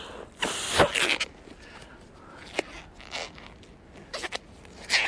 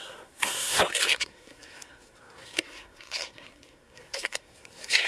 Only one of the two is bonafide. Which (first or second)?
first